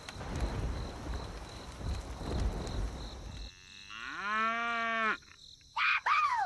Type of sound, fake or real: real